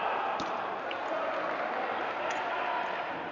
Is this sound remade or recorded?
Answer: recorded